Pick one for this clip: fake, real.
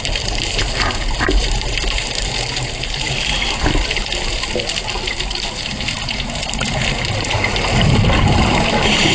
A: fake